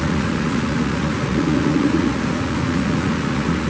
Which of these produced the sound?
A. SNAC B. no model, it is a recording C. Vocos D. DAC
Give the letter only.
C